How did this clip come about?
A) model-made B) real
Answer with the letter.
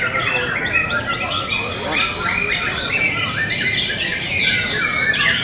B